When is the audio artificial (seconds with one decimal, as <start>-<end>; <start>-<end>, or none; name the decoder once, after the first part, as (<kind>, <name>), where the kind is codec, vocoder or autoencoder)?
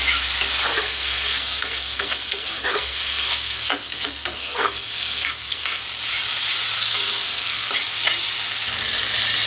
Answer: 0.8-5.8 (codec, SNAC); 6.8-7.7